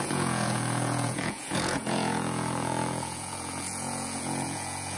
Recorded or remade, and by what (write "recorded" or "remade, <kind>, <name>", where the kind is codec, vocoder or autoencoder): remade, vocoder, Vocos